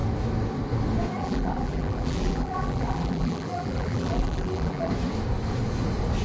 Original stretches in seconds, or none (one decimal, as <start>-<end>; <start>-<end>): 0.0-1.2; 4.9-6.2